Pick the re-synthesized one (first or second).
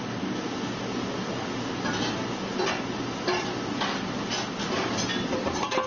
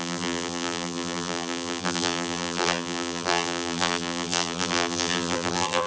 second